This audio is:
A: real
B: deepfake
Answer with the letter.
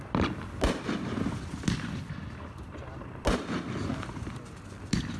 A